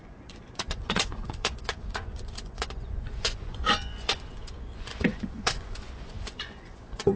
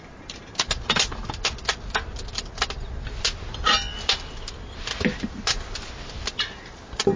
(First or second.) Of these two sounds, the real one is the second